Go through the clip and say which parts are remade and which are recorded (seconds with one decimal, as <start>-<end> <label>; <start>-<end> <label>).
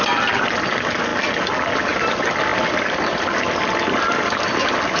0.0-5.0 recorded